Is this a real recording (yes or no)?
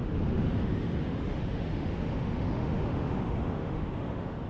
no